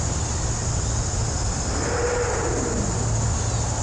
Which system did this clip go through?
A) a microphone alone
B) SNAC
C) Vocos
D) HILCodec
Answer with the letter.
A